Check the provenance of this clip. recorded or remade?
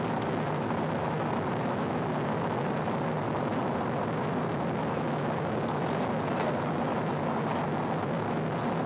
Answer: recorded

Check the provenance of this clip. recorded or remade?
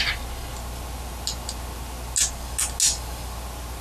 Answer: recorded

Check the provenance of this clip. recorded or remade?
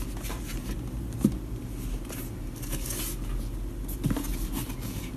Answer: recorded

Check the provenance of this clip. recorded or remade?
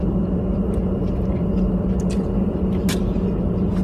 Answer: recorded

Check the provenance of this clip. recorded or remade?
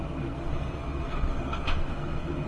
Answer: remade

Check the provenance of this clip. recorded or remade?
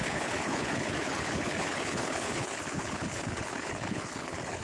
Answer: remade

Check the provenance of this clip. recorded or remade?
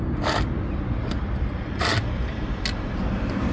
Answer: recorded